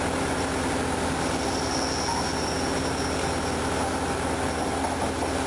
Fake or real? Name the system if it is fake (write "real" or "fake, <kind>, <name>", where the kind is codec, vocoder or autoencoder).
real